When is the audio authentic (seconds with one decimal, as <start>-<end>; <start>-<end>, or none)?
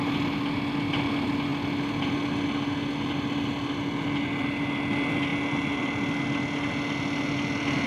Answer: 0.0-7.9